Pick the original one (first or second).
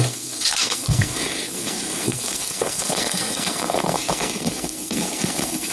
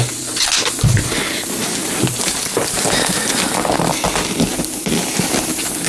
second